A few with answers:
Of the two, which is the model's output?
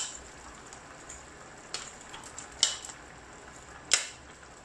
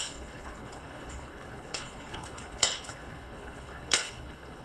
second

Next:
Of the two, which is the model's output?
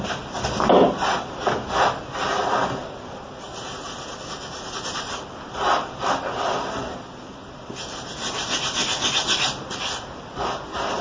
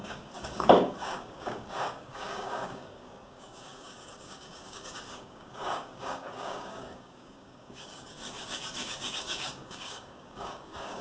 second